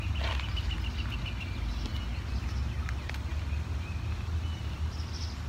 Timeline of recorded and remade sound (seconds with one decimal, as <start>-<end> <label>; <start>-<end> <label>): 0.0-5.5 recorded